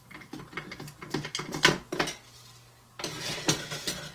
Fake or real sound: real